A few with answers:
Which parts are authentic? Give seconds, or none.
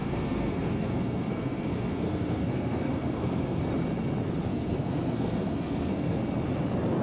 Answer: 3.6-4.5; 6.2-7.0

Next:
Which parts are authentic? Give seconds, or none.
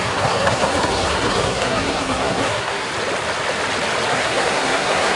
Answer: 2.9-4.1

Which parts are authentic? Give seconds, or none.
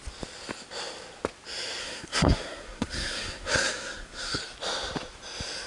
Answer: 0.0-1.8; 4.4-5.7